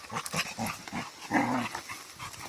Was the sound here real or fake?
real